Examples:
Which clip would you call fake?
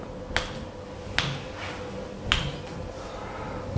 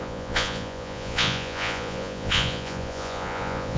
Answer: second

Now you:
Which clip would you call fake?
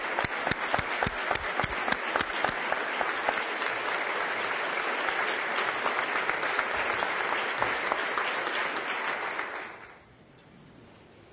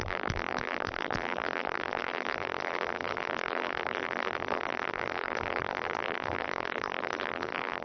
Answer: second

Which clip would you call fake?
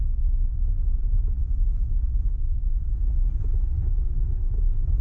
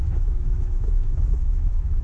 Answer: second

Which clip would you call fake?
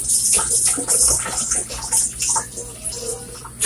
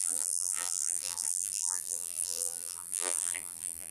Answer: second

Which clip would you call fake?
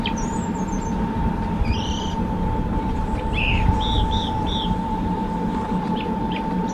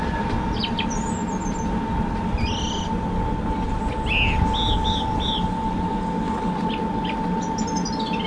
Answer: first